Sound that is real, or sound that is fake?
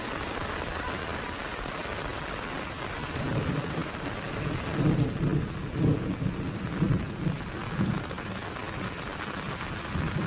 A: real